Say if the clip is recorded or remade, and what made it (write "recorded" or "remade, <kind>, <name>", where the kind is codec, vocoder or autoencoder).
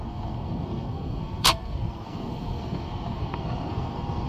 remade, codec, SNAC